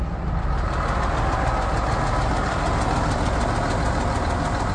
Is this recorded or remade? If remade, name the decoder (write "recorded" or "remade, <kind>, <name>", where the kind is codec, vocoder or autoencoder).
recorded